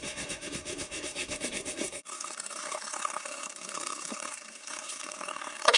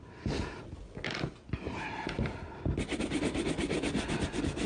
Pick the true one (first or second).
second